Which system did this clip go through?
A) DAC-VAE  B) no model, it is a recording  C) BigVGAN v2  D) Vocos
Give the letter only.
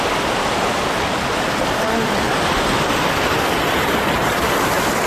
B